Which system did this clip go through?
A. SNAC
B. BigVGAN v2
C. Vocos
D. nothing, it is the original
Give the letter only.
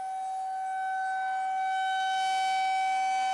D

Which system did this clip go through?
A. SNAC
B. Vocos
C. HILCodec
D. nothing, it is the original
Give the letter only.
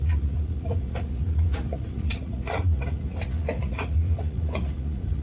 B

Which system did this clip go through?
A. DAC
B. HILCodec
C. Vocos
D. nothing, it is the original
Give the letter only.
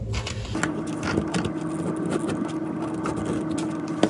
D